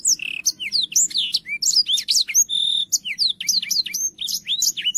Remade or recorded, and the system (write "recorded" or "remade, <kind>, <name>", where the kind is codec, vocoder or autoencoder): recorded